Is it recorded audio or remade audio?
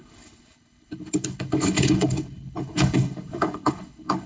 remade